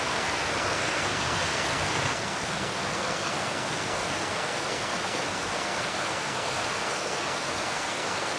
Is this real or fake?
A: fake